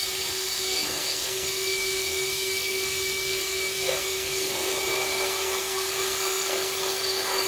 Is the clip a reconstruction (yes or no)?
yes